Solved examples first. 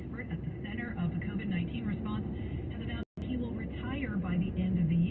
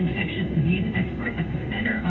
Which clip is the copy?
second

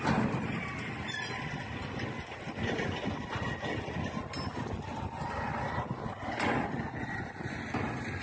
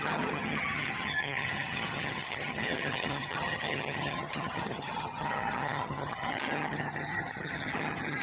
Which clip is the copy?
second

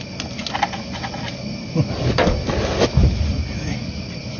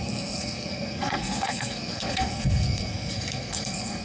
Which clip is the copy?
second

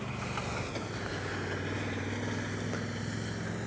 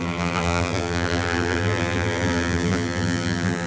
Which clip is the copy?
second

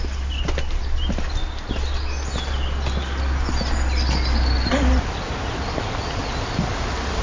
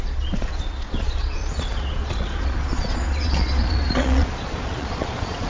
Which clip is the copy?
second